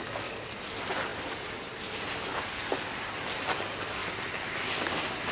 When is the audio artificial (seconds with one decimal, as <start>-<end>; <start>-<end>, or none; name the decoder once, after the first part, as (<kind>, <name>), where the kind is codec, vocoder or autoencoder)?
none